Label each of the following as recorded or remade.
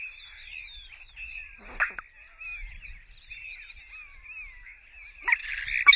recorded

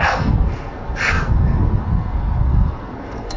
remade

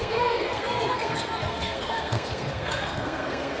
remade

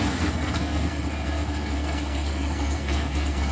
remade